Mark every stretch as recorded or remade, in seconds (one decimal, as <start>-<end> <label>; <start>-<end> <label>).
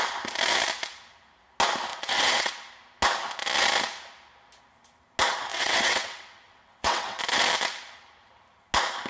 0.0-1.9 recorded; 1.9-2.5 remade; 2.5-5.5 recorded; 5.5-7.2 remade; 7.2-9.1 recorded